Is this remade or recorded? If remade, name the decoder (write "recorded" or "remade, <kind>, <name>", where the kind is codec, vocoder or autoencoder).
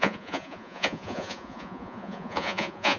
remade, vocoder, Vocos